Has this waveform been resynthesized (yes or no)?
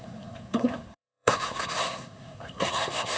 yes